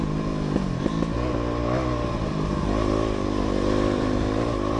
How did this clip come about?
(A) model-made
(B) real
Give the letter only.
B